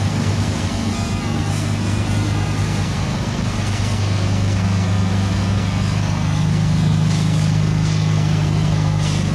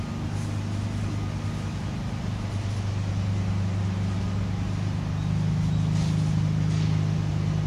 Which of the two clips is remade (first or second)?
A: first